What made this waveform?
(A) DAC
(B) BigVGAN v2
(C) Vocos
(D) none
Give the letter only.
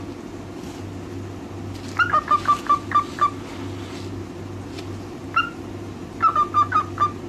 D